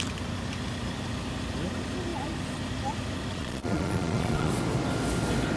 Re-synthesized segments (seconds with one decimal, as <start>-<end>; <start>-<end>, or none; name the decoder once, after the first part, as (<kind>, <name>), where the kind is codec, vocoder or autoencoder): 3.3-4.5 (vocoder, Vocos)